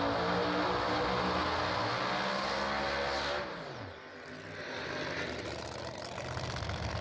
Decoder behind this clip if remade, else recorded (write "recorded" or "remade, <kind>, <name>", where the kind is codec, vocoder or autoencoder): recorded